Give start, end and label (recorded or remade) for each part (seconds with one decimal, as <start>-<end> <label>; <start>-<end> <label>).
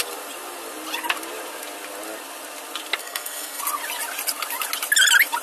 0.0-3.0 recorded; 3.0-3.6 remade; 3.6-5.4 recorded